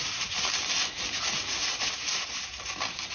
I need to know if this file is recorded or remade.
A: recorded